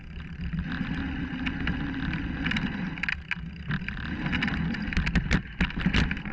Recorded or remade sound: recorded